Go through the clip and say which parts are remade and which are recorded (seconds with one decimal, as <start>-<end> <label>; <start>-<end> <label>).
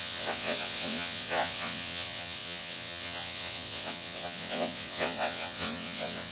0.0-6.3 remade